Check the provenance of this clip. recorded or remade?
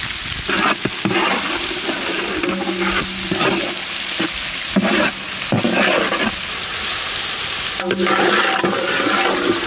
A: recorded